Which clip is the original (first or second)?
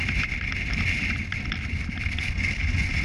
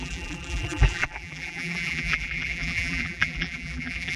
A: first